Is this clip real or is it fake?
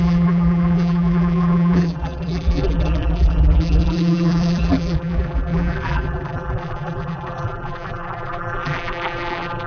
fake